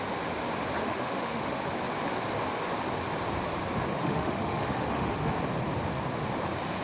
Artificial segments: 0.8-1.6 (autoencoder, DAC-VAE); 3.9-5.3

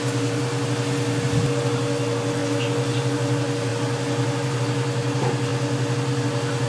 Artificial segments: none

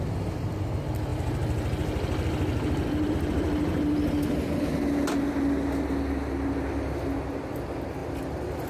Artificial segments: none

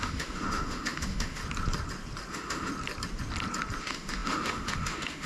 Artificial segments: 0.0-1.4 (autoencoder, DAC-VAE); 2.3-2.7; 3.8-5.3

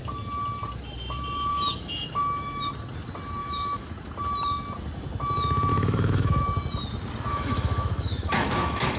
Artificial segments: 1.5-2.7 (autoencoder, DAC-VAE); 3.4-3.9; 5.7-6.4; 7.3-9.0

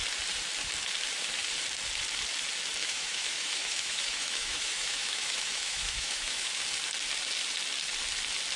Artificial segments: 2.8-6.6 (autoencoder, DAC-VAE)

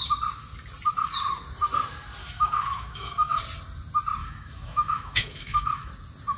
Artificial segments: 2.2-3.4 (autoencoder, DAC-VAE); 4.2-5.9